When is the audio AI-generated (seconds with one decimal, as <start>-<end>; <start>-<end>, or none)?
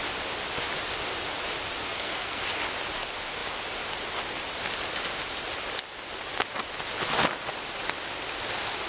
1.8-2.4